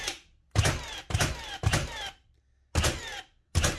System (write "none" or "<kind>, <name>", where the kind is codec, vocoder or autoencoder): none